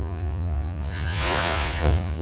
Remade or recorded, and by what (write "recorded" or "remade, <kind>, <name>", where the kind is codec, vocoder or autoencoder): remade, vocoder, Vocos